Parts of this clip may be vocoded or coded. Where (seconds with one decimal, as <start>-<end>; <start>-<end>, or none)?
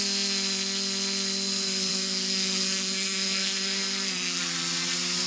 1.9-4.4